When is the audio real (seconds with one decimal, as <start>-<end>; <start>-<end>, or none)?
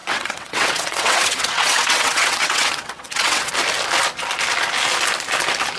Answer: 3.5-5.8